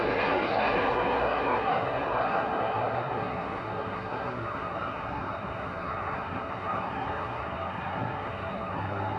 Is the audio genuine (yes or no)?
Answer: no